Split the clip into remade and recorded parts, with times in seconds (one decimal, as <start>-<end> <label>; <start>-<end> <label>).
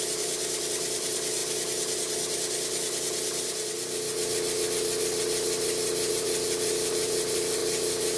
0.0-1.4 remade; 1.4-6.1 recorded; 6.1-7.6 remade; 7.6-8.2 recorded